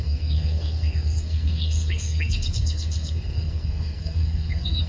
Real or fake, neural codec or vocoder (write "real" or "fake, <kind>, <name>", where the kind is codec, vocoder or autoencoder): fake, codec, SNAC